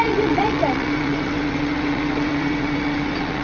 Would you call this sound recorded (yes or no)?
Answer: no